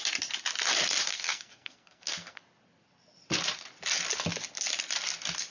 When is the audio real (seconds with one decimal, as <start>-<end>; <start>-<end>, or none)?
0.0-1.1; 2.4-5.5

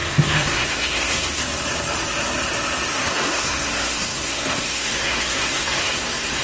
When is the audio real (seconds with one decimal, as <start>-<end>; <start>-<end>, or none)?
1.4-2.9

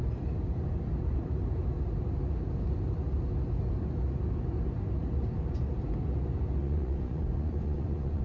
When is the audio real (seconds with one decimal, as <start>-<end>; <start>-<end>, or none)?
0.0-6.6

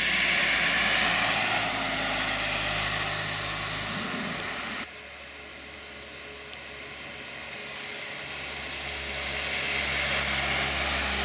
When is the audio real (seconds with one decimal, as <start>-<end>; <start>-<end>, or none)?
0.0-7.6; 8.2-11.2

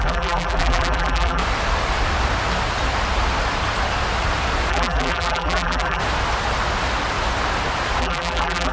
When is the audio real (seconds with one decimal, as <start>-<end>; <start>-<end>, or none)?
1.4-4.7; 6.0-8.0